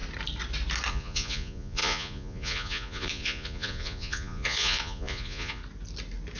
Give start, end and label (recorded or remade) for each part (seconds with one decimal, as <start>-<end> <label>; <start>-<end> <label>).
0.0-0.9 recorded; 0.9-5.6 remade; 5.6-6.4 recorded